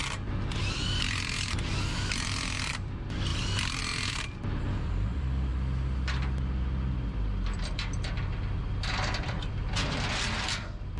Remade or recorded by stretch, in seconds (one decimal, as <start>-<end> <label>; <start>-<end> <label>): 0.0-0.6 recorded; 0.6-5.5 remade; 5.5-9.2 recorded; 9.2-11.0 remade